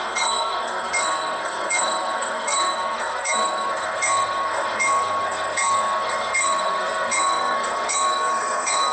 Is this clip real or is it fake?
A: fake